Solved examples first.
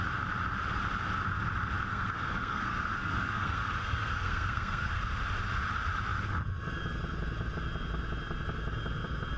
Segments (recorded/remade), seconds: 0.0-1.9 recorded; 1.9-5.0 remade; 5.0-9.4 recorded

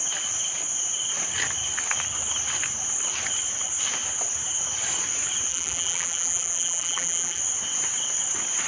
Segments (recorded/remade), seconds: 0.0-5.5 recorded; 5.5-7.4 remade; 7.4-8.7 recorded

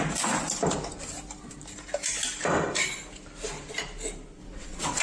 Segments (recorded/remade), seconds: 0.0-4.4 recorded; 4.4-5.0 remade

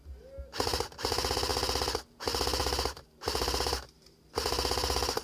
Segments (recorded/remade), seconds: 0.0-2.6 recorded; 2.6-4.2 remade; 4.2-5.2 recorded

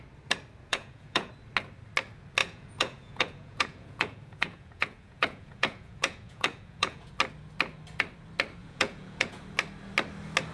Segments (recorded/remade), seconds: 0.0-0.7 recorded; 0.7-1.3 remade; 1.3-2.4 recorded; 2.4-7.1 remade; 7.1-8.6 recorded; 8.6-9.4 remade; 9.4-10.5 recorded

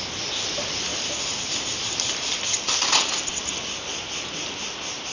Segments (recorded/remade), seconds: 0.0-0.9 recorded; 0.9-2.4 remade; 2.4-5.1 recorded

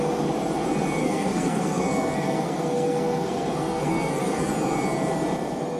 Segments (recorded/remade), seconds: 0.0-1.0 recorded; 1.0-4.5 remade; 4.5-5.8 recorded

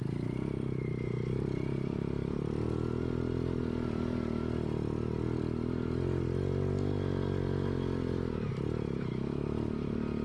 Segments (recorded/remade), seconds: 0.0-4.4 recorded; 4.4-5.4 remade; 5.4-10.2 recorded